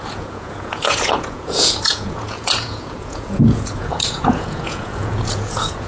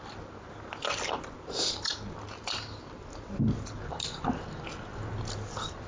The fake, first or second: first